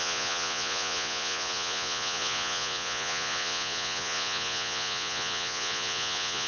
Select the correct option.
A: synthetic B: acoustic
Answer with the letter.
A